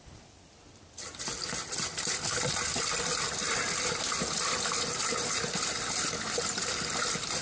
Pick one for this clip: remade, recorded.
recorded